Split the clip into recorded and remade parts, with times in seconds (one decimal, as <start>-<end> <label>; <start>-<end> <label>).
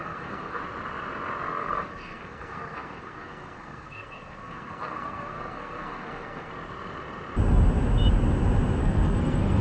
0.0-0.6 remade; 0.6-1.6 recorded; 1.6-6.5 remade; 6.5-8.8 recorded; 8.8-9.6 remade